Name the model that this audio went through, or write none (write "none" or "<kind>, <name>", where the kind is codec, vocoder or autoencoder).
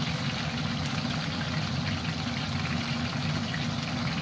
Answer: none